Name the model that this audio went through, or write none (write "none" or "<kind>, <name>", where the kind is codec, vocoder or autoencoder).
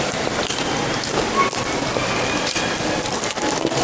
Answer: none